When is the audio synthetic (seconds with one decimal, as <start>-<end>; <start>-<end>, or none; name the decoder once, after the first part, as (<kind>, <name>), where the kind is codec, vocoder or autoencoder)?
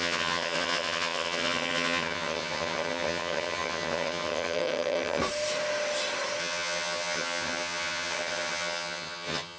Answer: 0.0-5.2 (vocoder, HiFi-GAN); 6.4-9.6